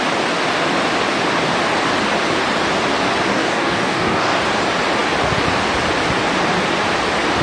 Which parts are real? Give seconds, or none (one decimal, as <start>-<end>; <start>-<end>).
0.0-3.3; 4.4-7.4